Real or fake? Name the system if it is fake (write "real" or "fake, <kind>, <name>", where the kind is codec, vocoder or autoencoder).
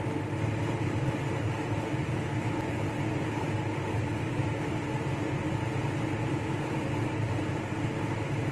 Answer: real